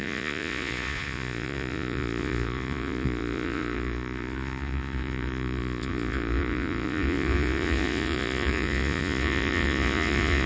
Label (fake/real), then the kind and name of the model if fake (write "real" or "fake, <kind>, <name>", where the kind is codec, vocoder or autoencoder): fake, vocoder, Vocos